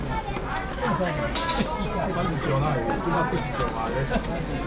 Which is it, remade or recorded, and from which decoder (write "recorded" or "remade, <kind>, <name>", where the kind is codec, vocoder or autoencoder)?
recorded